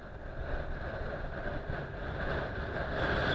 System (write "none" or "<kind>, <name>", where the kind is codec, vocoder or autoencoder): none